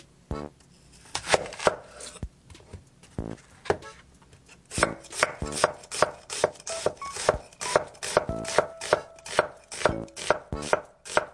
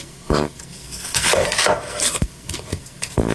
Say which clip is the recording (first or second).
first